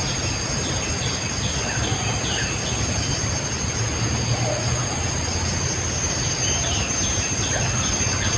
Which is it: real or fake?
real